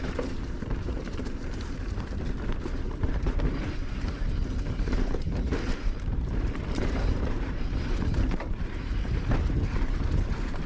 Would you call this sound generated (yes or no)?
yes